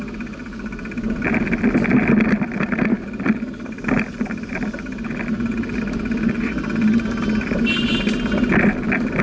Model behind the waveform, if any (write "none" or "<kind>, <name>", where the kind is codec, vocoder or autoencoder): none